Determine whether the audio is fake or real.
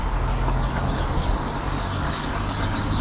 fake